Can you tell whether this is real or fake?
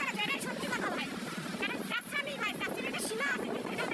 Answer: fake